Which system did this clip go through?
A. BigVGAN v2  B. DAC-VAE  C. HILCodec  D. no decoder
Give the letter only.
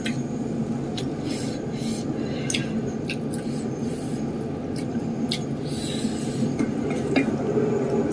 D